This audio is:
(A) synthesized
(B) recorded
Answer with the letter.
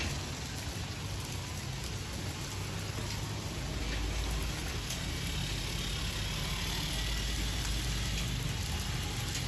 B